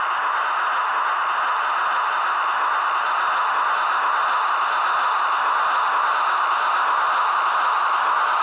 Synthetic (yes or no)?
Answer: no